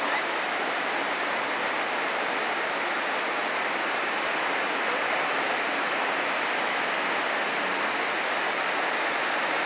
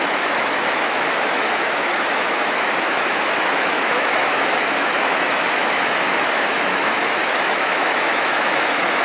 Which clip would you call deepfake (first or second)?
second